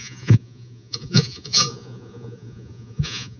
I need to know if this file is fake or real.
fake